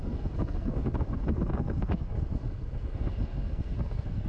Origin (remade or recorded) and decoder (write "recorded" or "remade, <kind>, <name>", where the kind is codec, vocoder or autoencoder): remade, codec, SNAC